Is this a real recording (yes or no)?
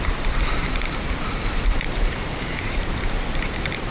no